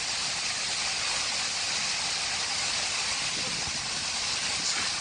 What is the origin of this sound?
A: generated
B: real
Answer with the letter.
B